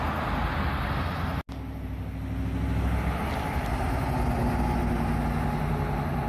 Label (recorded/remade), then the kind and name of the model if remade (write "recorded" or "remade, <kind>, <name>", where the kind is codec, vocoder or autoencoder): recorded